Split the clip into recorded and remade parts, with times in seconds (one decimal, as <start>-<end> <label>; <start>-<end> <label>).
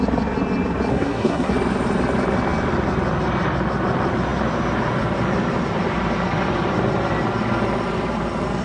0.0-0.9 recorded; 0.9-1.5 remade; 1.5-8.6 recorded